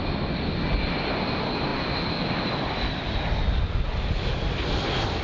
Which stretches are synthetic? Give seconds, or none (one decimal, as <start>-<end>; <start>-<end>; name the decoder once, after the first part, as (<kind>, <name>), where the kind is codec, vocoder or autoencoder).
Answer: none